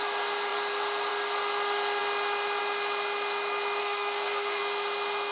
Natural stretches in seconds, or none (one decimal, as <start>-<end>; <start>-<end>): 0.0-3.8; 4.6-5.3